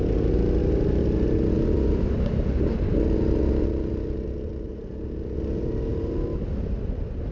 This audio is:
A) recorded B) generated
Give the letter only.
A